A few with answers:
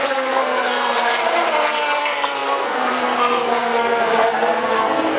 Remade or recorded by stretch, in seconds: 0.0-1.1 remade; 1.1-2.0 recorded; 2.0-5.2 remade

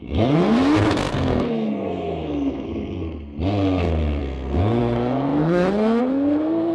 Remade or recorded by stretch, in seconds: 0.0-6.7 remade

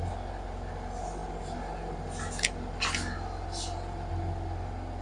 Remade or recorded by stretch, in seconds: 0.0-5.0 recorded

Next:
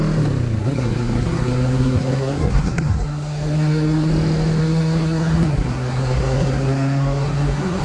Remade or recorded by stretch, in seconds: 0.0-0.6 recorded; 0.6-4.1 remade; 4.1-4.6 recorded; 4.6-7.8 remade

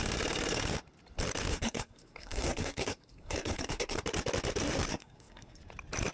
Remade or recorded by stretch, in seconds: 0.0-1.5 recorded; 1.5-4.0 remade; 4.0-4.9 recorded; 4.9-5.6 remade; 5.6-6.1 recorded

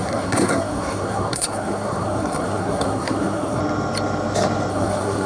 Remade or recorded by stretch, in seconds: 0.0-3.6 remade; 3.6-4.7 recorded; 4.7-5.3 remade